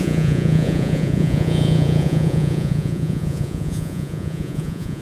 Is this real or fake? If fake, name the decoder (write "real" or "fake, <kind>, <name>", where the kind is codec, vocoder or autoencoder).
fake, vocoder, Vocos